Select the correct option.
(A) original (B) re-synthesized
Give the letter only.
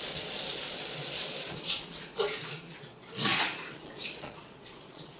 B